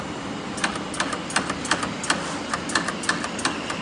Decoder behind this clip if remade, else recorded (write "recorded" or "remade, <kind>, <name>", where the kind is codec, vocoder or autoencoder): recorded